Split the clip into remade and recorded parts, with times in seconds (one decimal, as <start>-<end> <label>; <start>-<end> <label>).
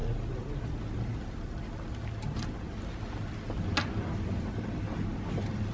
0.0-5.7 recorded